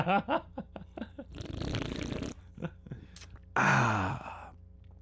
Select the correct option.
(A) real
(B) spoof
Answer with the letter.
A